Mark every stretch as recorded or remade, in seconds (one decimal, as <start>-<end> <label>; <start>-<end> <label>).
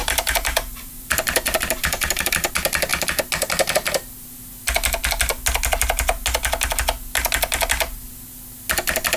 0.0-2.5 remade; 2.5-9.2 recorded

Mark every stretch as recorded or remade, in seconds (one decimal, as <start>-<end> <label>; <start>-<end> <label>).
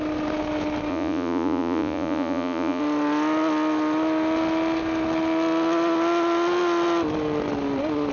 0.0-0.9 recorded; 0.9-2.8 remade; 2.8-8.1 recorded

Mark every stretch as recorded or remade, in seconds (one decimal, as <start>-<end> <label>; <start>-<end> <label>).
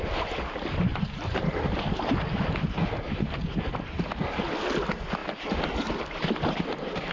0.0-0.9 recorded; 0.9-1.8 remade; 1.8-7.1 recorded